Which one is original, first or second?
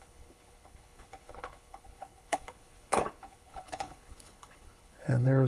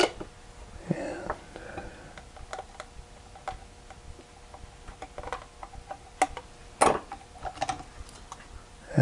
second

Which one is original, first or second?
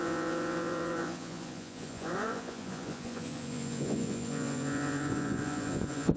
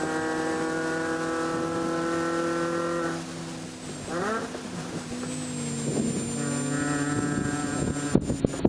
second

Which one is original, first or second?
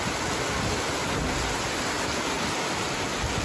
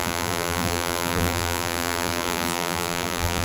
first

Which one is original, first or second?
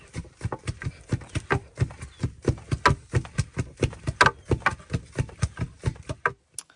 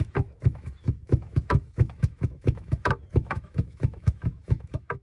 first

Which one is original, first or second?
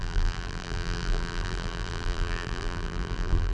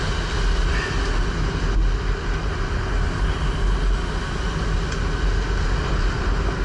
second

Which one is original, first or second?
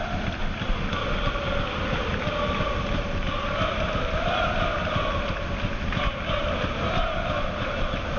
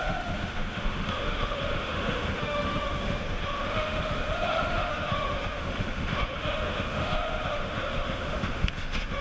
first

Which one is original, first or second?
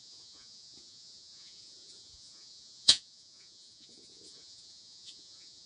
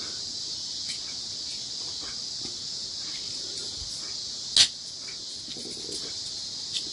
second